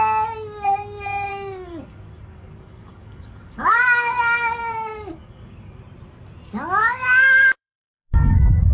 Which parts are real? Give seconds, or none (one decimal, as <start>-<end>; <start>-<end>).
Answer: 0.0-1.3; 5.8-6.8